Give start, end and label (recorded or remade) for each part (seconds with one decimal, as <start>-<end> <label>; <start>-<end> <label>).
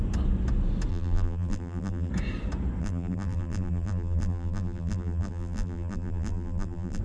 0.0-0.9 recorded; 0.9-2.1 remade; 2.1-2.8 recorded; 2.8-7.0 remade